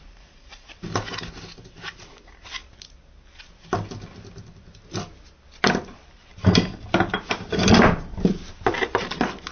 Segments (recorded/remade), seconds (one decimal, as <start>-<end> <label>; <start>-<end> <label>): 0.0-9.5 recorded